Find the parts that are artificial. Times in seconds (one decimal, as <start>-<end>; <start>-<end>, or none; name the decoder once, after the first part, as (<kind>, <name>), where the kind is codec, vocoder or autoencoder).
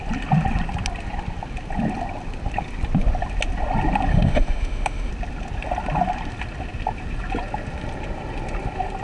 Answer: 4.1-5.1 (autoencoder, DAC-VAE)